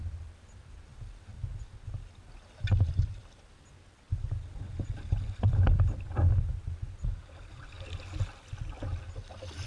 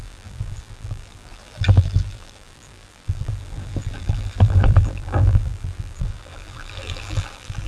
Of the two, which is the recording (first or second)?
first